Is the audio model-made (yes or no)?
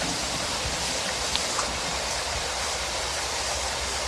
no